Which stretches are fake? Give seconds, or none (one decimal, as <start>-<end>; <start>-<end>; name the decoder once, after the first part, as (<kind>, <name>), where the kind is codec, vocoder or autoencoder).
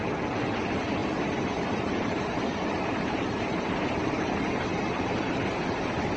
1.0-4.3 (vocoder, BigVGAN v2); 4.7-6.2